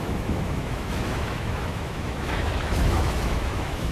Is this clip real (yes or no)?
no